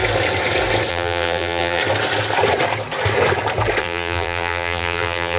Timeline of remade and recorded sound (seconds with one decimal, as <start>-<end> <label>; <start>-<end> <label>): 0.0-0.9 recorded; 0.9-1.8 remade; 1.8-3.8 recorded; 3.8-5.4 remade